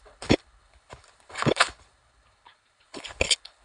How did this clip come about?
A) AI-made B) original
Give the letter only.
A